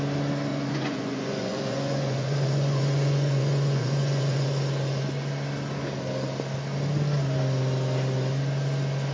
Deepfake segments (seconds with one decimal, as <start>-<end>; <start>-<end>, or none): 0.5-4.5